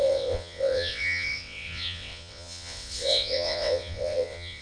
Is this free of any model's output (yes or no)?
no